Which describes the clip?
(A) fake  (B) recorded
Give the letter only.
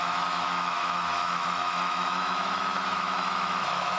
A